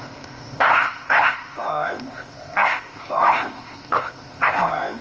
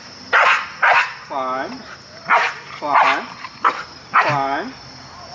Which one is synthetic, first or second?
first